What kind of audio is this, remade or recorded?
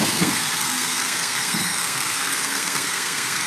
remade